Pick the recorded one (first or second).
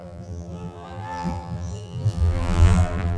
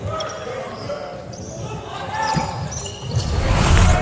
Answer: second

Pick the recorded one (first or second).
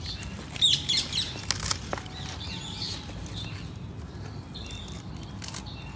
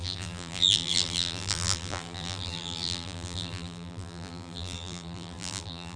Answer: first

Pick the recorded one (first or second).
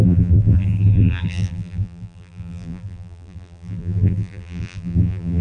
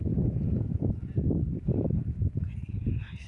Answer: second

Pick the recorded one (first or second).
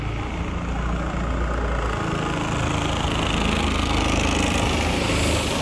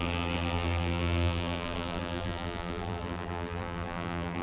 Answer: first